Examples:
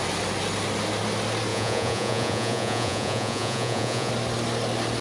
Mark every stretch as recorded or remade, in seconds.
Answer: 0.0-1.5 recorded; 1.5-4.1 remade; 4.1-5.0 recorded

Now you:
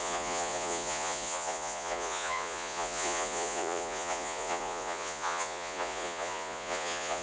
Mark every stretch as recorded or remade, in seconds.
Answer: 0.0-7.2 remade

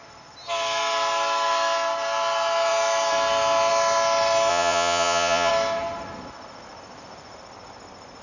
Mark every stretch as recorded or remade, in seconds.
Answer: 0.0-4.5 recorded; 4.5-5.5 remade; 5.5-8.2 recorded